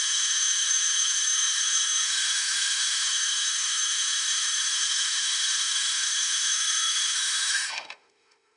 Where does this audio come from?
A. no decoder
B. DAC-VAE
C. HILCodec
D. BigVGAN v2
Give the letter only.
B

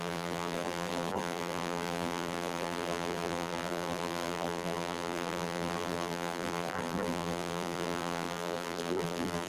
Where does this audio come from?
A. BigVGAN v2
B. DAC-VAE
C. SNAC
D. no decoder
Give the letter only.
A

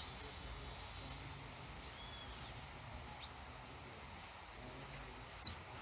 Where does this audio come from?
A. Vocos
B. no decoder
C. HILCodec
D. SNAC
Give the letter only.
B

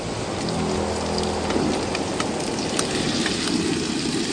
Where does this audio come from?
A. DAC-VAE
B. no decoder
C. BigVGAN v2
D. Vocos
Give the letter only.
B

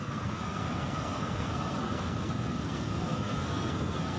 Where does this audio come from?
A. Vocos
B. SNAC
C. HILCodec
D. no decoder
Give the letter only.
B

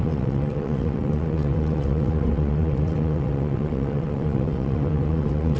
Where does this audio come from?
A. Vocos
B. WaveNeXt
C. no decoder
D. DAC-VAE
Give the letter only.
B